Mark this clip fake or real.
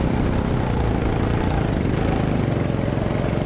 real